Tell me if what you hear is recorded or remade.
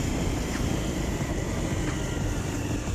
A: remade